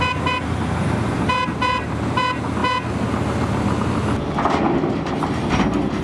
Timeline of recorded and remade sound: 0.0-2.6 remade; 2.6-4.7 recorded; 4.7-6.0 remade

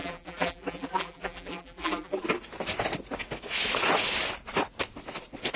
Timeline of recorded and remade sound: 0.0-2.2 remade; 2.2-5.6 recorded

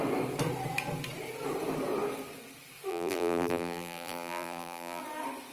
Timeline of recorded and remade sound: 0.0-2.9 recorded; 2.9-5.0 remade; 5.0-5.5 recorded

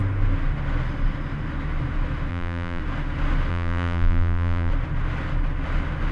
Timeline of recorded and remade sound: 0.0-2.3 recorded; 2.3-2.8 remade; 2.8-3.5 recorded; 3.5-4.7 remade; 4.7-6.1 recorded